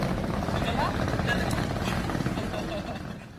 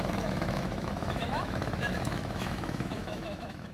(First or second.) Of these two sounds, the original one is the first